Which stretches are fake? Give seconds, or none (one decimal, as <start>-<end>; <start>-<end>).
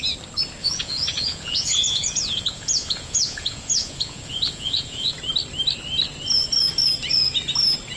0.6-5.1